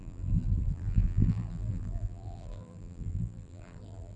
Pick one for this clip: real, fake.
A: fake